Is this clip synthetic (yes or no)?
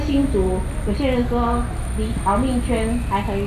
no